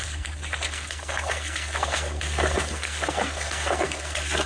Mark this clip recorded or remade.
remade